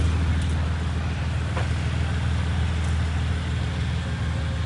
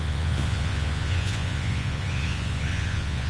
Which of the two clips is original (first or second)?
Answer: first